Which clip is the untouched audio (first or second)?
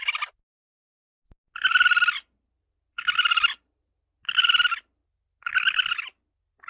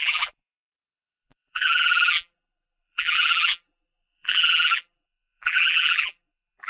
first